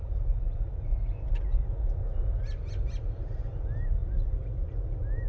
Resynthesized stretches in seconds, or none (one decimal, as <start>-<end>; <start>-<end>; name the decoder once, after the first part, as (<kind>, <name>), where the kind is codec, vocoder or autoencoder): none